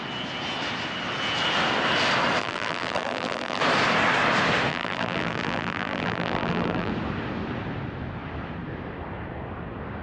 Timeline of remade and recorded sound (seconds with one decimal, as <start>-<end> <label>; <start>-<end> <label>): 0.0-2.4 recorded; 2.4-3.6 remade; 3.6-4.7 recorded; 4.7-6.9 remade; 6.9-10.0 recorded